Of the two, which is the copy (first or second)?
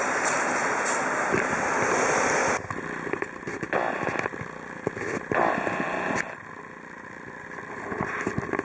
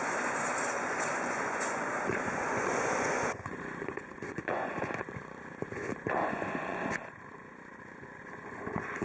second